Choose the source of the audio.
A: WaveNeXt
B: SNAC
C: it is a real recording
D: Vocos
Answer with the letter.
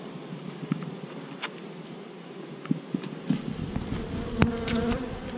C